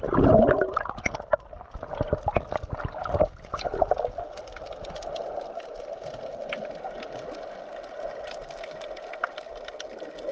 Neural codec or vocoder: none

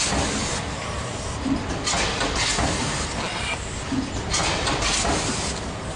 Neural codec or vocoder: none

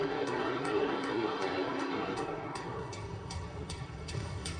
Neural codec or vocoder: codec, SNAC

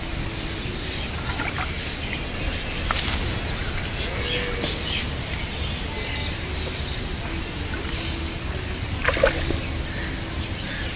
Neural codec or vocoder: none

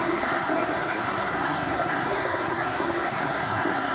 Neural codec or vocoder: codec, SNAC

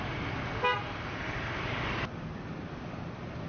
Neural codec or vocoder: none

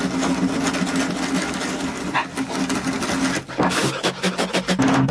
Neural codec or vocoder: none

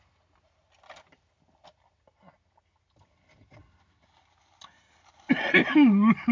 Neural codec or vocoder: none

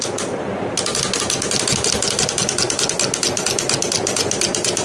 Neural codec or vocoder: none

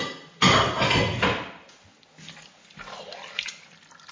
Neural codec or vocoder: none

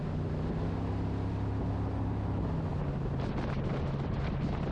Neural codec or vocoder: none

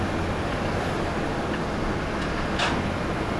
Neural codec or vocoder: none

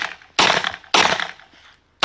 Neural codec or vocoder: none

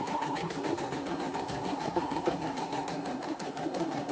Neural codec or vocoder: codec, SNAC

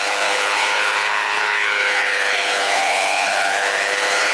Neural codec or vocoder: codec, HILCodec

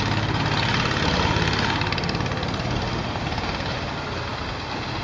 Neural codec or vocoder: none